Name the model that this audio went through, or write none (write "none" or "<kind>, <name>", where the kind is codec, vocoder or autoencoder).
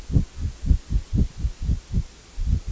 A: none